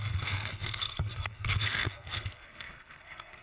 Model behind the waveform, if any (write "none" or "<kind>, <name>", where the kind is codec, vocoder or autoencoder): codec, SNAC